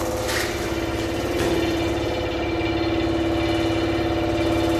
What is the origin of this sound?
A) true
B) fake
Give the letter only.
A